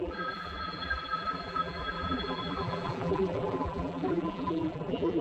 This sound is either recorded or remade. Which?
remade